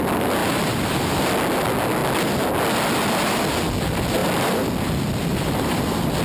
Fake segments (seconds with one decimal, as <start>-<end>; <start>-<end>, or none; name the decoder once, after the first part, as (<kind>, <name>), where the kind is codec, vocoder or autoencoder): 0.4-1.0 (vocoder, BigVGAN v2); 4.2-5.7